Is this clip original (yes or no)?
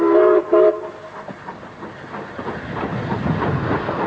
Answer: yes